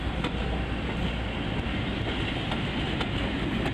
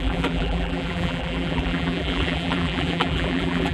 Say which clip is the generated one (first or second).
second